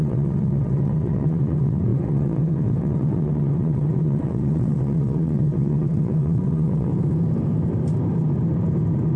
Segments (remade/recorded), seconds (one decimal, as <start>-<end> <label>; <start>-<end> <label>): 0.0-6.9 remade; 6.9-9.2 recorded